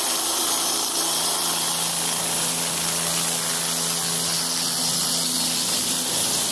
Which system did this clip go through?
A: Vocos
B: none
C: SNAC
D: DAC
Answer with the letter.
B